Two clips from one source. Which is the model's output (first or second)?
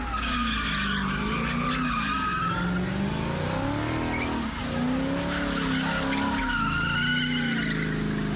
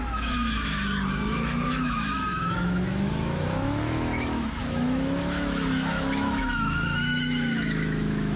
second